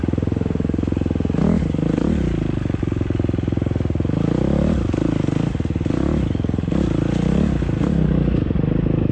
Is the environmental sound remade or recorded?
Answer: recorded